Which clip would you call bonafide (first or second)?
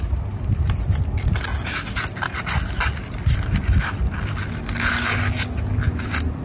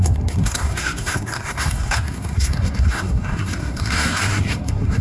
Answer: first